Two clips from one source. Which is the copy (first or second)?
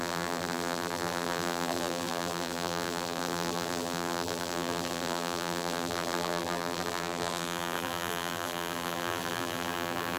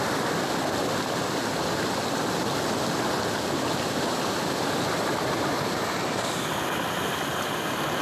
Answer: first